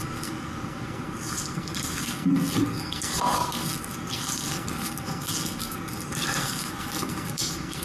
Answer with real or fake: fake